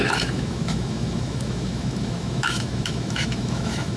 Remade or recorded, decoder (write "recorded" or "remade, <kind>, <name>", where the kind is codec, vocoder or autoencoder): remade, autoencoder, DAC-VAE